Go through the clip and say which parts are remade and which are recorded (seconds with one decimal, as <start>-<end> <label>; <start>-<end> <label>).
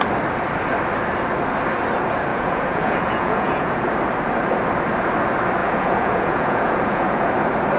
0.0-2.3 recorded; 2.3-3.8 remade; 3.8-5.6 recorded; 5.6-7.3 remade; 7.3-7.8 recorded